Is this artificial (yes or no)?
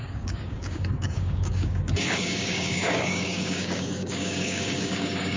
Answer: yes